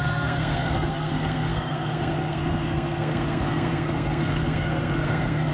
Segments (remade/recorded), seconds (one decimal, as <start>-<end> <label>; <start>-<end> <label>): 0.0-5.5 remade